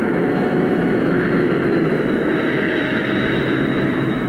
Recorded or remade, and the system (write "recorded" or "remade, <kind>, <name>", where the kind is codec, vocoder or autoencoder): remade, autoencoder, DAC-VAE